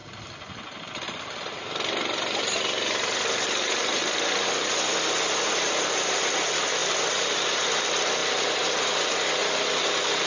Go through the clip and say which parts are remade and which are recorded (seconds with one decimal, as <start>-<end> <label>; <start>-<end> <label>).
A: 0.0-10.3 recorded